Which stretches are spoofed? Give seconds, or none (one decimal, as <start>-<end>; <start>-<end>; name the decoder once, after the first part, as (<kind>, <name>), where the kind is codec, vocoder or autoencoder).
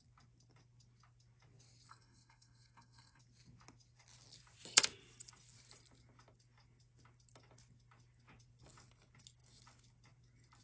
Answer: 1.9-3.2 (codec, SNAC)